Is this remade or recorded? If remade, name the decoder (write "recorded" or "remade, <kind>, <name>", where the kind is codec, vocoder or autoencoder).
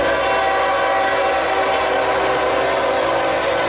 recorded